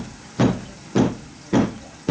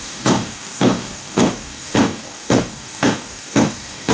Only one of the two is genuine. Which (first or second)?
first